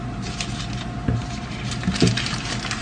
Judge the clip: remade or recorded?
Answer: remade